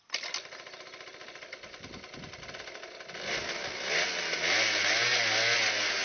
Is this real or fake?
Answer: real